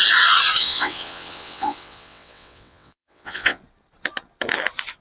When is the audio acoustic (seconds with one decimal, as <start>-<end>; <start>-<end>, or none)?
0.0-0.6; 3.6-5.0